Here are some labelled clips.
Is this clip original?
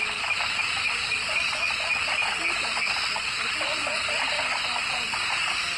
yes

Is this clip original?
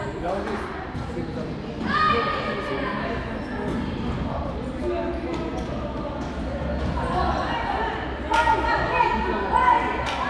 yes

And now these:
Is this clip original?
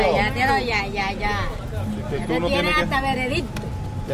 yes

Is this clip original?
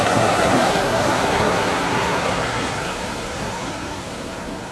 no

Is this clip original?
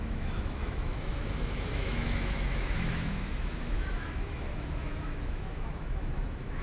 no